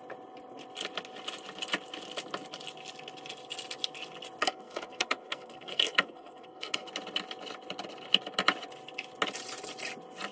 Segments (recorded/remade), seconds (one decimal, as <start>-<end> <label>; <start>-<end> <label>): 0.0-4.4 recorded; 4.4-6.9 remade; 6.9-10.3 recorded